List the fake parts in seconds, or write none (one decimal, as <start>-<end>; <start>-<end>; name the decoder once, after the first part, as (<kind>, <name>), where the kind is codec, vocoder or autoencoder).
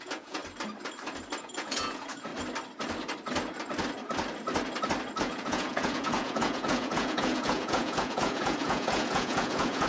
0.0-0.4 (vocoder, Vocos); 1.4-2.3; 5.2-9.9